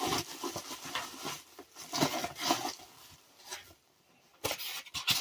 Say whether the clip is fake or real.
real